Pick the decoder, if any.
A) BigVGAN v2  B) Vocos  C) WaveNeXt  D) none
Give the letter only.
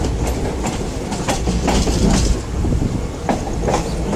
D